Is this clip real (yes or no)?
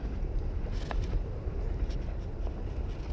yes